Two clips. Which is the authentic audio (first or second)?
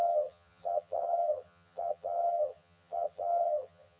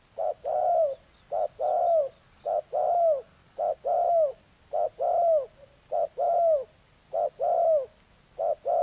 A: second